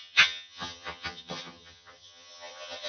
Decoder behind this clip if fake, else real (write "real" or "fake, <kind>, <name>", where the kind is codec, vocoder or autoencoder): fake, vocoder, HiFi-GAN